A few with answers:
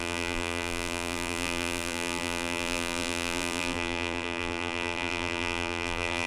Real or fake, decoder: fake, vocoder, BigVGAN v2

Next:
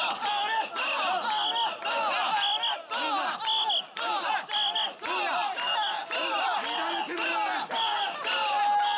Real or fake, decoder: real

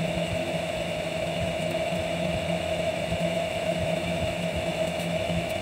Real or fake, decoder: fake, autoencoder, DAC-VAE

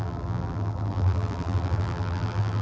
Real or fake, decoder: fake, vocoder, BigVGAN v2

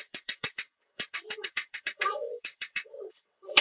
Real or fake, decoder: fake, vocoder, WaveNeXt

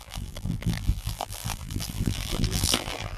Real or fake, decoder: fake, vocoder, BigVGAN v2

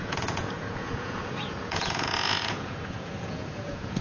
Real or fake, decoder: fake, vocoder, Vocos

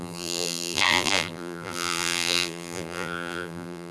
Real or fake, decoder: fake, vocoder, BigVGAN v2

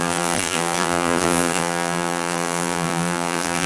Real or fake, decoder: fake, vocoder, BigVGAN v2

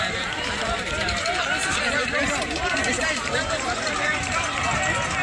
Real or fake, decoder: fake, vocoder, BigVGAN v2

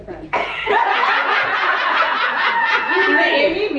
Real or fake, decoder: fake, vocoder, Vocos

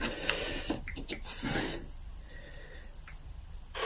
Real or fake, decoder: real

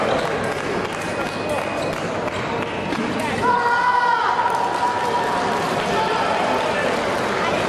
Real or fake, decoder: real